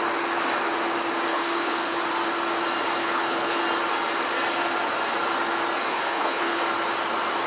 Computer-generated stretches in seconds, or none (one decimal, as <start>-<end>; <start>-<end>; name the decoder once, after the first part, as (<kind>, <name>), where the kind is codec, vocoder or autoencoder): 1.3-2.0 (codec, HILCodec); 3.0-3.6; 5.9-6.6